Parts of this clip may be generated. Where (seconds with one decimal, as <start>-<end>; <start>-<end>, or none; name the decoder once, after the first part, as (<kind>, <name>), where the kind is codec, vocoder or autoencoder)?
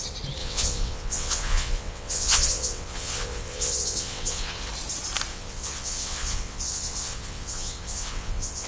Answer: 0.4-4.7 (vocoder, WaveNeXt); 5.3-8.7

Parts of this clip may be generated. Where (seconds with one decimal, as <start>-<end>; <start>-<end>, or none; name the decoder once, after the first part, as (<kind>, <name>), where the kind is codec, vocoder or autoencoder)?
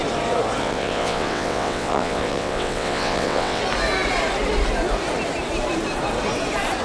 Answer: 0.6-3.6 (vocoder, WaveNeXt)